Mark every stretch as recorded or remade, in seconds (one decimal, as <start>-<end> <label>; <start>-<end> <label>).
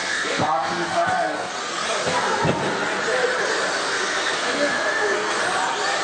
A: 0.0-1.5 remade; 1.5-2.0 recorded; 2.0-2.6 remade; 2.6-3.8 recorded; 3.8-5.4 remade; 5.4-6.0 recorded